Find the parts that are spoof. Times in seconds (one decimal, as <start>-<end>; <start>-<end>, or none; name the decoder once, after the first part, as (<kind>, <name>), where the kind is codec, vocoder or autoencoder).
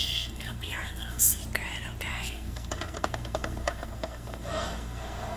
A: 0.0-1.4 (codec, SNAC); 2.1-5.4